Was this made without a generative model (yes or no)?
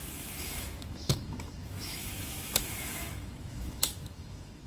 no